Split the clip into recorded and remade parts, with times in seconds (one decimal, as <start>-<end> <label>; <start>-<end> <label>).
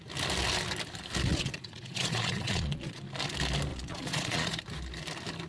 0.0-1.3 recorded; 1.3-3.0 remade; 3.0-3.7 recorded; 3.7-4.6 remade; 4.6-5.5 recorded